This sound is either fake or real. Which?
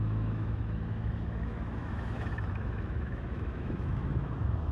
fake